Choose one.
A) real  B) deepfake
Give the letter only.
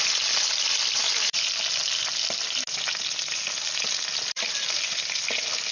A